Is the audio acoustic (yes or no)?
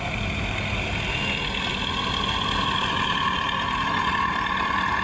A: yes